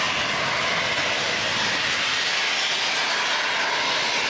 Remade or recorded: recorded